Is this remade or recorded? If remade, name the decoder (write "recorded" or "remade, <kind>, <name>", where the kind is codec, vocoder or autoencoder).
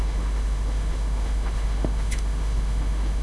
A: remade, autoencoder, DAC-VAE